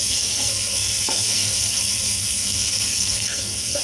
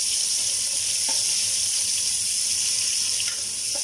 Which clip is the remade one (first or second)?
first